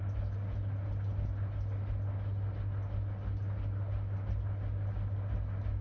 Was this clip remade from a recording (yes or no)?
no